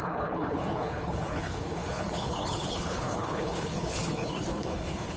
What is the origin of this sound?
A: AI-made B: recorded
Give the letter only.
A